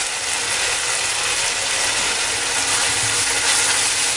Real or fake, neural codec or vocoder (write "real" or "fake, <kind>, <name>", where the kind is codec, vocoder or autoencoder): real